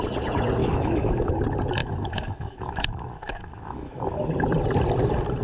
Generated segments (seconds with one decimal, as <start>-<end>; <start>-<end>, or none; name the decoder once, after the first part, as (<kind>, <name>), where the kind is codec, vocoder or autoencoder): 0.6-1.3 (autoencoder, DAC-VAE); 1.8-4.3